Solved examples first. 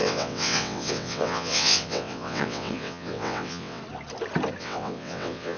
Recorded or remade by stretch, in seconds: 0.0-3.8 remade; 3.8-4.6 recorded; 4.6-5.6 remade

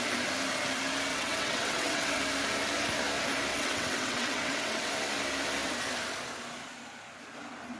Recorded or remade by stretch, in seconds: 0.0-1.1 recorded; 1.1-2.2 remade; 2.2-3.5 recorded; 3.5-4.9 remade; 4.9-7.8 recorded